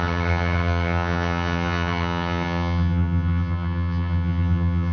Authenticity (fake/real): fake